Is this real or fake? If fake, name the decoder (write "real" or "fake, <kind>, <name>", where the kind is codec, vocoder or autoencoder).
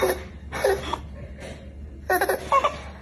real